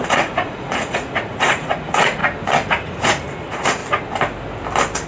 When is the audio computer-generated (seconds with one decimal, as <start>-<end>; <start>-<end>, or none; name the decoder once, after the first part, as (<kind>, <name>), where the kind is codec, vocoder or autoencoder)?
0.0-2.2 (vocoder, Vocos); 2.7-3.8